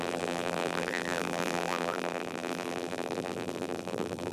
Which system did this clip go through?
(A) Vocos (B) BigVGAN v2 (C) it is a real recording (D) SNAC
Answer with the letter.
B